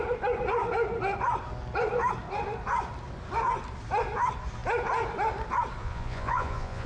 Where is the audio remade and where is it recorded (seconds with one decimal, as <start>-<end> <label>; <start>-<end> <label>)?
0.0-5.8 recorded; 5.8-6.9 remade